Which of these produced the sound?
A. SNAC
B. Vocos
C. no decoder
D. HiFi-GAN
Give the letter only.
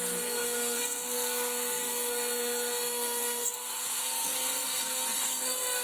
A